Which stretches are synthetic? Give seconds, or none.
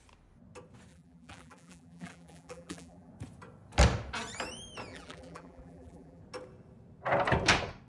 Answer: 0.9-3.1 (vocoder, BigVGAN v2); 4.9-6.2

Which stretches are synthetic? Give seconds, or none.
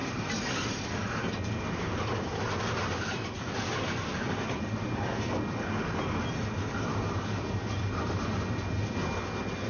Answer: 0.0-5.2 (vocoder, BigVGAN v2)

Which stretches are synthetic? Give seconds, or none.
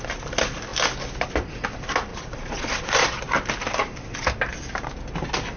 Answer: 2.1-2.9 (vocoder, Vocos)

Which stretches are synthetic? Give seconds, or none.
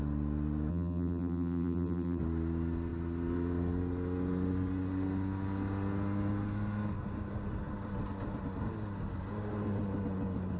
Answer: 0.7-2.2 (vocoder, BigVGAN v2)